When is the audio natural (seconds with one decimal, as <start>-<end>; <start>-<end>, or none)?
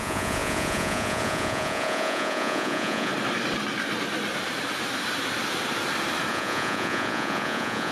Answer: 3.1-6.3